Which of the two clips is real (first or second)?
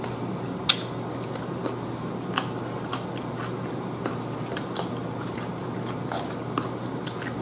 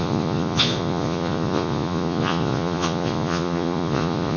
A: first